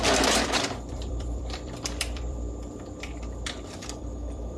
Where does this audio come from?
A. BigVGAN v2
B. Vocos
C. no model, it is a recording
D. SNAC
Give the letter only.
A